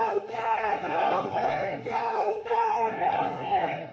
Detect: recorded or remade remade